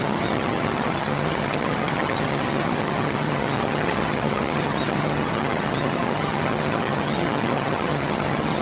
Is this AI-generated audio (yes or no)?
yes